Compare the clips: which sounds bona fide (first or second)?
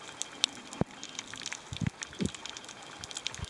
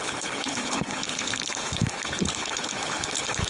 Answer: first